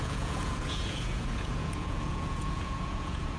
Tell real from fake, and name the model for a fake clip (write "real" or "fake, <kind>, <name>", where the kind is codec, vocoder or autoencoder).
fake, vocoder, Vocos